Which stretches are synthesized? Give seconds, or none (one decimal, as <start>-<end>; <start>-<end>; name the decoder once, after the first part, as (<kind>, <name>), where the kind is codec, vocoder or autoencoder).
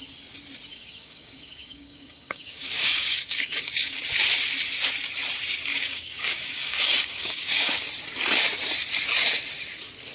0.7-4.0 (codec, DAC); 5.7-7.8